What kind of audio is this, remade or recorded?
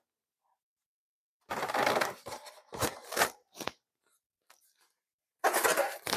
recorded